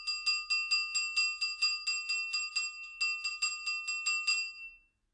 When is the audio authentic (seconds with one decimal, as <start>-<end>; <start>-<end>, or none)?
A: 0.0-5.1